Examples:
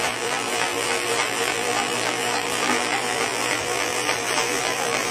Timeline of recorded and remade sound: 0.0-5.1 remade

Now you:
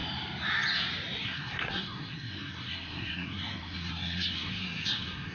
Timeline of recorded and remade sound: 0.0-1.2 recorded; 1.2-5.3 remade

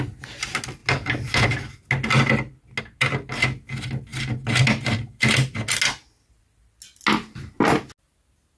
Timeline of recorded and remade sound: 0.0-8.6 recorded

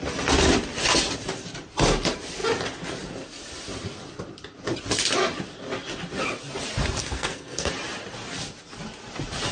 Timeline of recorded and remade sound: 0.0-7.0 recorded; 7.0-7.7 remade; 7.7-9.5 recorded

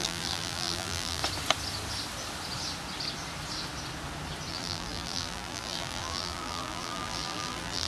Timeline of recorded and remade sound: 0.0-1.2 remade; 1.2-4.5 recorded; 4.5-7.9 remade